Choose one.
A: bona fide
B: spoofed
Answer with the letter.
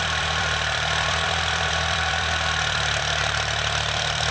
B